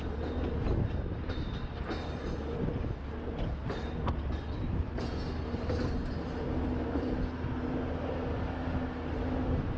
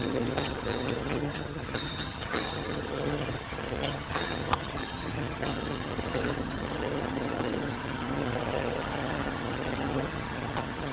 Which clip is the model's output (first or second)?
second